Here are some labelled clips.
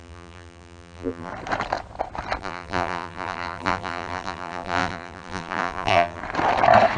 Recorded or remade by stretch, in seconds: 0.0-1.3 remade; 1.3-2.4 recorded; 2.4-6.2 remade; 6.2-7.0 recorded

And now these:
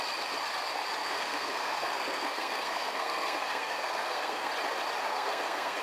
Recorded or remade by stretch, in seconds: 0.0-1.0 recorded; 1.0-4.5 remade; 4.5-5.1 recorded; 5.1-5.8 remade

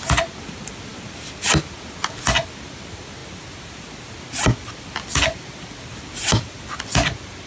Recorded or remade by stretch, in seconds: 0.0-7.5 recorded

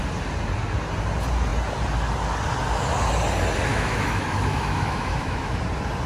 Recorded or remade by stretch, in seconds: 0.0-3.7 recorded; 3.7-5.6 remade; 5.6-6.1 recorded

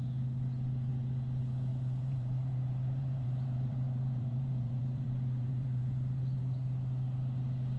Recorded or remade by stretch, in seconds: 0.0-1.7 recorded; 1.7-6.4 remade; 6.4-7.8 recorded